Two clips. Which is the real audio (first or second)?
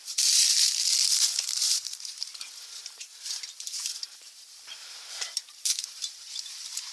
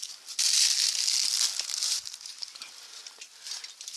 second